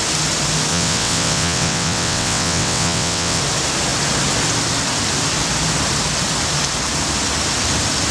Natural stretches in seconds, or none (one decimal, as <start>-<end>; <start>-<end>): 0.0-0.7; 3.4-8.1